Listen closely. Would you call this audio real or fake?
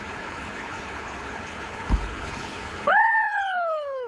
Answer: fake